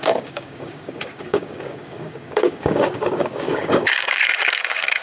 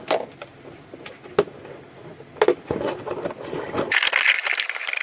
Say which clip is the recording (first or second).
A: second